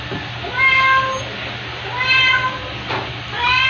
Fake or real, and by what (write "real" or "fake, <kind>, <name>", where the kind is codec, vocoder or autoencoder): real